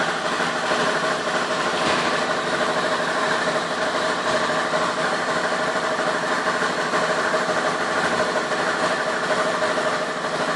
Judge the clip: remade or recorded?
remade